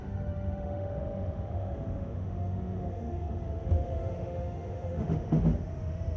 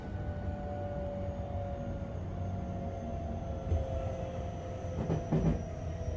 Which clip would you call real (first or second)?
second